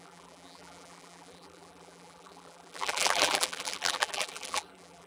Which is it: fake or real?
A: fake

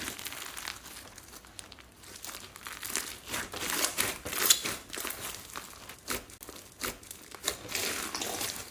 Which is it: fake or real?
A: real